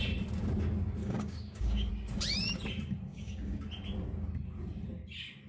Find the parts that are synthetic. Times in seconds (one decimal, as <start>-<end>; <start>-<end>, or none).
1.0-1.9; 3.1-3.6